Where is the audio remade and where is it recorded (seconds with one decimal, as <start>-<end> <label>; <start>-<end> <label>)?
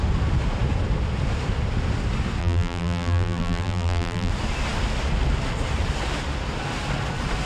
0.0-2.4 recorded; 2.4-4.3 remade; 4.3-7.5 recorded